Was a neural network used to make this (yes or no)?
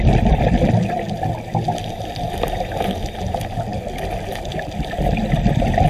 no